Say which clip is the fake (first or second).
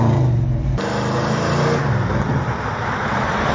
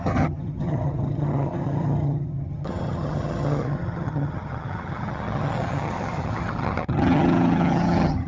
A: second